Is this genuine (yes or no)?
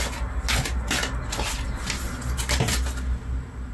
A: yes